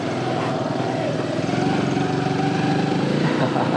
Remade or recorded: recorded